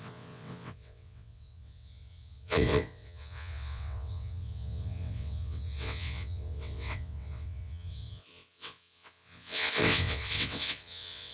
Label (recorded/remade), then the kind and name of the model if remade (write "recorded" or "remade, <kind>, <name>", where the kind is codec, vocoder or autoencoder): remade, vocoder, WaveNeXt